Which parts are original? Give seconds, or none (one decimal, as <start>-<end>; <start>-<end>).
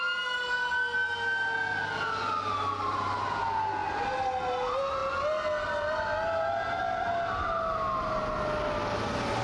0.0-9.4